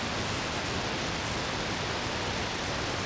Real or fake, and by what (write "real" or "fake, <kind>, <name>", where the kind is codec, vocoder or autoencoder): real